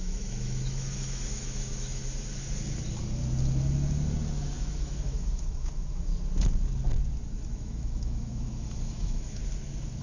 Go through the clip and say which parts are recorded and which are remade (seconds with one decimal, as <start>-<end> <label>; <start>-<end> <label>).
0.0-2.0 remade; 2.0-4.6 recorded; 4.6-6.1 remade; 6.1-7.3 recorded; 7.3-9.4 remade; 9.4-10.0 recorded